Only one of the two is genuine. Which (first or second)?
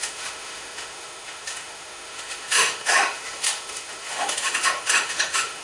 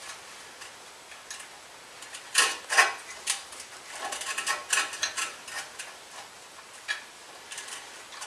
second